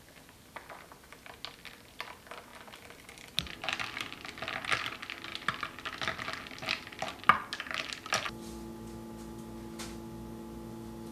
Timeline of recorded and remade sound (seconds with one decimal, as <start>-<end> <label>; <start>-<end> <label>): 0.0-11.1 recorded